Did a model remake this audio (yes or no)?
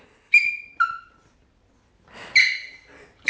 no